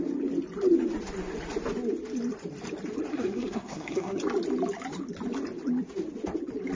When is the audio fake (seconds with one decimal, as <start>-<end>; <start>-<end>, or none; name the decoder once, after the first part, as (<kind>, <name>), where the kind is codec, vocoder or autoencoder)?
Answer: 3.1-4.2 (codec, SNAC)